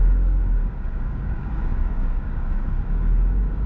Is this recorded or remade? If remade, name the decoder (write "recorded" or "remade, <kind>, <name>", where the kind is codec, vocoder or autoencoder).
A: remade, codec, DAC